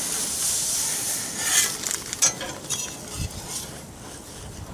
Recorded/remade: recorded